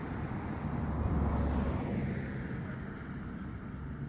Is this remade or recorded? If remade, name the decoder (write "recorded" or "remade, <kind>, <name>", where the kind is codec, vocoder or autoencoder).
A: recorded